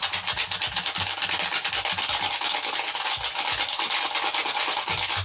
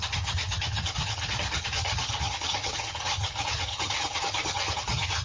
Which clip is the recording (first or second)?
first